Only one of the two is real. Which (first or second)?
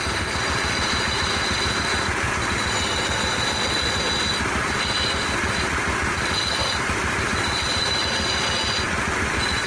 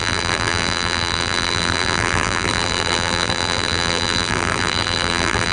first